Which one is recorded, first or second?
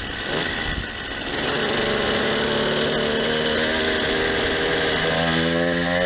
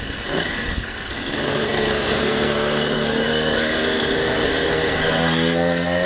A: first